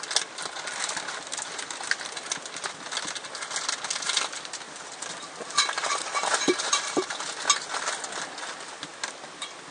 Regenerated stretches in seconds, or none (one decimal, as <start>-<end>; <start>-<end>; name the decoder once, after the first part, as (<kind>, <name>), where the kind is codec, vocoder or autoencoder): 5.8-7.1 (vocoder, BigVGAN v2)